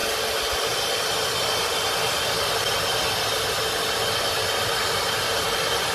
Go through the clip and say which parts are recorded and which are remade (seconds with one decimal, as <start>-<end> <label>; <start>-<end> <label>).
0.0-5.9 recorded